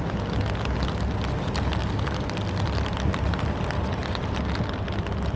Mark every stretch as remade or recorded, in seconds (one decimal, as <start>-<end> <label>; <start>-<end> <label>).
0.0-5.4 recorded